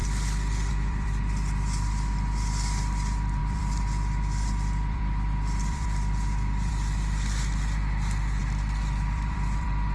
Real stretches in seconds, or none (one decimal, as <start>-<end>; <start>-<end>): none